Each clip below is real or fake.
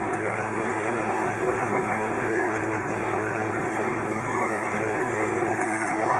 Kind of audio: fake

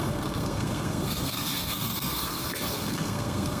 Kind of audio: fake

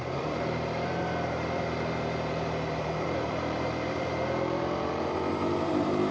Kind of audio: fake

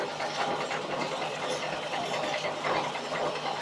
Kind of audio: real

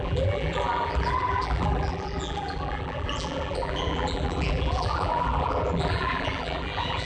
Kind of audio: fake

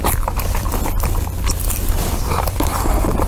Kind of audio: fake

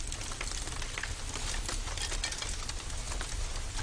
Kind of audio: real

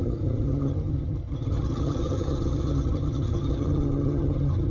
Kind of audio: fake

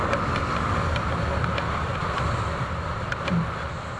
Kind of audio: real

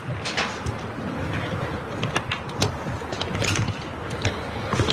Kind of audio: real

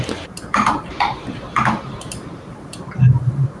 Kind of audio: fake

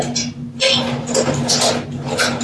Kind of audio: real